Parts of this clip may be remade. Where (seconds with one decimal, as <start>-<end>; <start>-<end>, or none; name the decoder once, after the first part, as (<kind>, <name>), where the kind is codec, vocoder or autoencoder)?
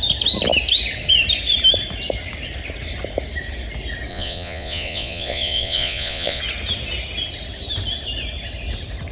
4.1-6.4 (vocoder, Vocos)